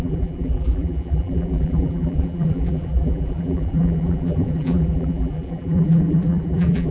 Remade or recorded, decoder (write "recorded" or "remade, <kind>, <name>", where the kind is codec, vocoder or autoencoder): remade, vocoder, BigVGAN v2